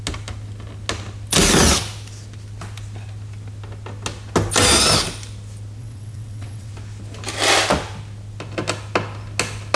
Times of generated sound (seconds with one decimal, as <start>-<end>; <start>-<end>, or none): 5.8-6.7